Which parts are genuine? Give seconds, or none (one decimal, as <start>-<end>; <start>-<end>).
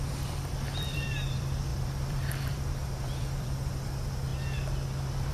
4.3-5.3